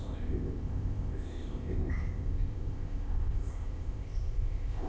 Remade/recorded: remade